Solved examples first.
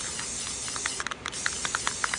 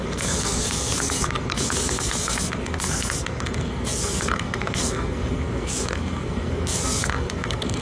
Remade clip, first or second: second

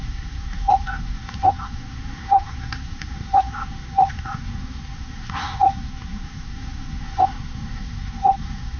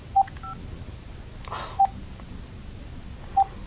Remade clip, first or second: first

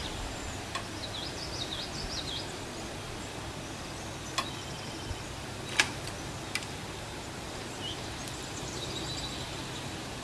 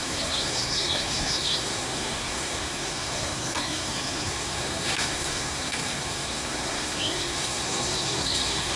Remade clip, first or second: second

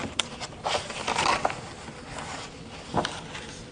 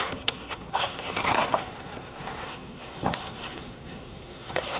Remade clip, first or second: second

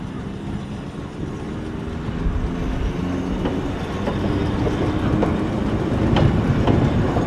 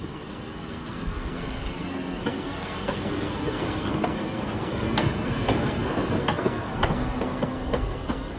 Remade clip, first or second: second